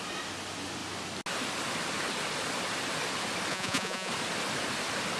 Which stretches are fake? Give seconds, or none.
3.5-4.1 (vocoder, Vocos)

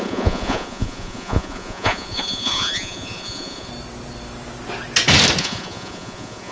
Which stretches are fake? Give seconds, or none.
0.0-3.7 (vocoder, Vocos); 5.4-6.5

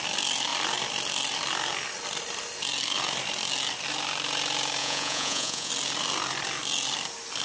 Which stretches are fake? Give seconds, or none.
4.8-5.7 (vocoder, Vocos)

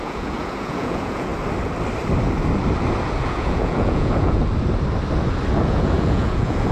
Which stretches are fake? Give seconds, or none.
0.0-1.3 (vocoder, Vocos); 3.2-4.4; 5.6-6.7

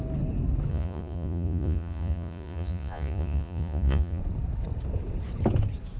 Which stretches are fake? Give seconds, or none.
0.7-4.2 (vocoder, Vocos)

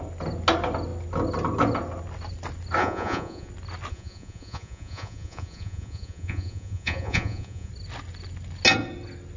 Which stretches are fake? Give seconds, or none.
2.8-3.5 (vocoder, Vocos); 3.9-7.7

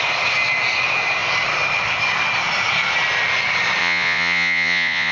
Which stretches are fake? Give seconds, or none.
3.8-5.1 (vocoder, Vocos)

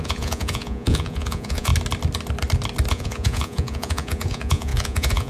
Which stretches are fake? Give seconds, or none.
0.0-1.7 (vocoder, Vocos); 2.9-5.3